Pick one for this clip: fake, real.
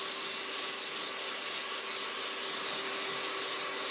real